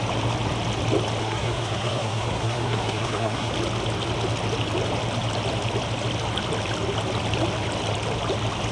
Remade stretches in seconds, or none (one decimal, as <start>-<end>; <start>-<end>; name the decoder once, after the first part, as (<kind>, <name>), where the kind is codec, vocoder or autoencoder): 1.2-3.5 (codec, SNAC)